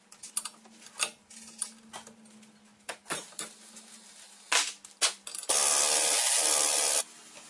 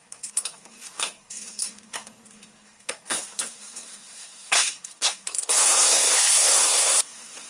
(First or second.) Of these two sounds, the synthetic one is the second